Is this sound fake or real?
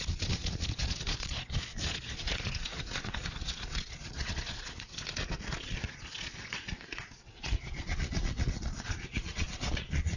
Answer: fake